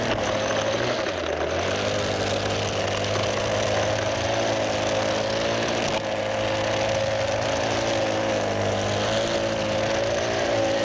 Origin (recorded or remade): recorded